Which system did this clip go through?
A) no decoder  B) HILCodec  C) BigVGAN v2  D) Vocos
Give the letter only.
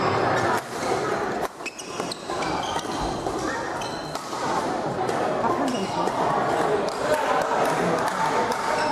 A